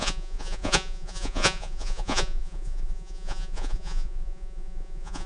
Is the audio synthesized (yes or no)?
yes